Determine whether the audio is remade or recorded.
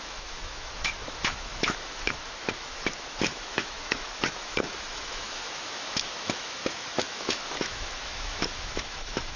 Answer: remade